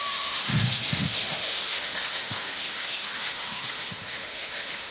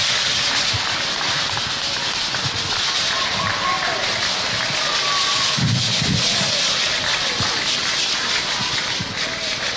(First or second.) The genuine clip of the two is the second